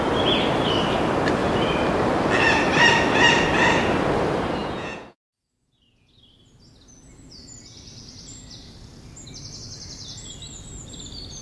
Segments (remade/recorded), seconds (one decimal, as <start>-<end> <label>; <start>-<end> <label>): 0.0-4.6 recorded; 4.6-6.2 remade; 6.2-11.4 recorded